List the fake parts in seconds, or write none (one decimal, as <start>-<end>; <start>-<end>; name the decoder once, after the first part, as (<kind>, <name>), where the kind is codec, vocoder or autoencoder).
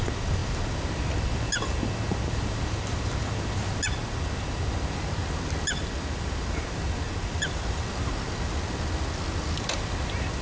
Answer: none